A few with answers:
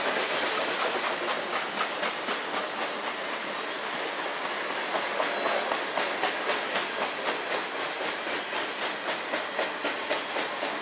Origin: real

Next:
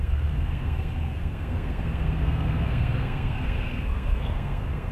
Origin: fake